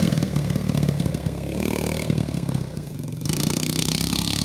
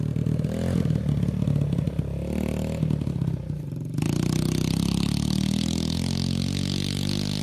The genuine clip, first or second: second